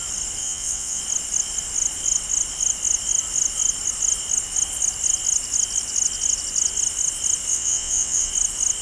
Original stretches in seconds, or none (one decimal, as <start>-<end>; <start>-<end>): 0.0-0.4; 1.0-7.5; 8.3-8.8